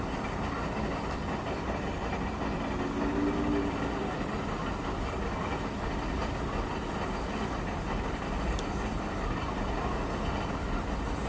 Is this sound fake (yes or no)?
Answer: no